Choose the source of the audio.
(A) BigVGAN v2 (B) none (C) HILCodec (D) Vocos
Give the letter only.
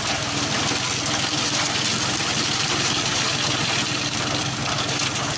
B